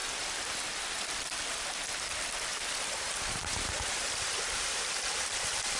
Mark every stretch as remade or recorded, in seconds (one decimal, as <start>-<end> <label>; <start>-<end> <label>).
0.0-1.1 remade; 1.1-2.5 recorded; 2.5-5.8 remade